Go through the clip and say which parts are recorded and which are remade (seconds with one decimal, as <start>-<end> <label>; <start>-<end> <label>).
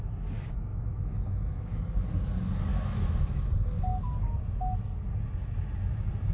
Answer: 0.0-0.7 recorded; 0.7-1.8 remade; 1.8-2.7 recorded; 2.7-3.5 remade; 3.5-6.3 recorded